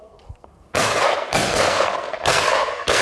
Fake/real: fake